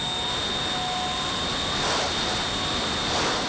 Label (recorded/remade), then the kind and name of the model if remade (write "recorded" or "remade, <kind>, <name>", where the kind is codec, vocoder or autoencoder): recorded